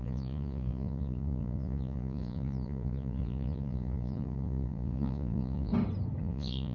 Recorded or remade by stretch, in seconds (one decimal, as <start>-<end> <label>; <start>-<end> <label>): 0.0-5.7 remade; 5.7-6.2 recorded; 6.2-6.7 remade